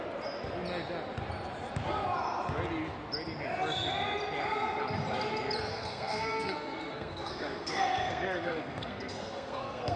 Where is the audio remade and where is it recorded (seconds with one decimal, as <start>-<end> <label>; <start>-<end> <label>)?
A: 0.0-5.7 recorded; 5.7-10.0 remade